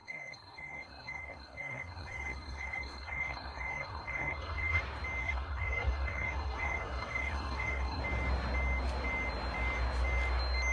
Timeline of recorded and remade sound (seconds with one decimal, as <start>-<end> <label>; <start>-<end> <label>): 0.0-4.8 remade; 4.8-5.2 recorded; 5.2-8.0 remade; 8.0-10.7 recorded